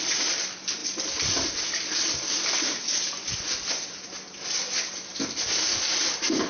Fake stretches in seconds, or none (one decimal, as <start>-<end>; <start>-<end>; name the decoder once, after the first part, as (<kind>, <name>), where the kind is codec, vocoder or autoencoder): none